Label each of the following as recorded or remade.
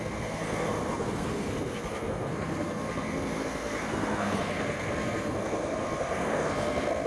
remade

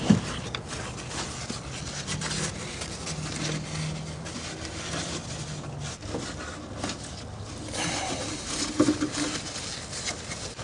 recorded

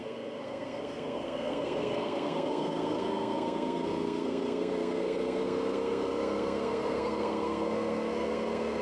remade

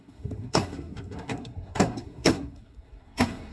remade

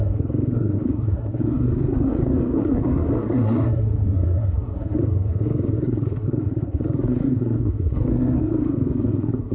remade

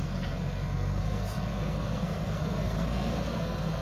remade